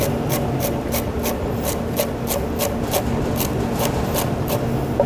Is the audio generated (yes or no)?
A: no